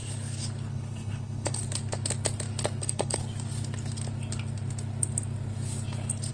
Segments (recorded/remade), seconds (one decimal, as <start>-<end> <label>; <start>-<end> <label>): 0.0-0.7 recorded; 0.7-1.6 remade; 1.6-2.8 recorded; 2.8-3.2 remade; 3.2-6.3 recorded